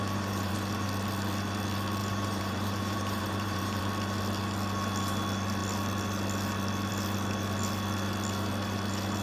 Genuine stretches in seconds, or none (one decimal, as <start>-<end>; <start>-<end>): 0.5-2.0; 3.8-9.2

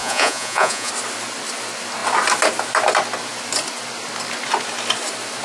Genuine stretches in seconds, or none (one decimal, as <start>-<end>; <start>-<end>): 0.9-5.4